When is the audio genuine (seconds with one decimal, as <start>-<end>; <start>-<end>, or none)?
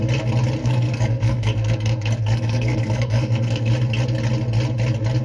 0.0-0.6; 3.7-5.2